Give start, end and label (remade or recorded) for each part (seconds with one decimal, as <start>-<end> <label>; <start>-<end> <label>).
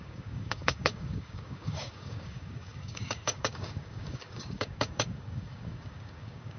0.0-6.6 remade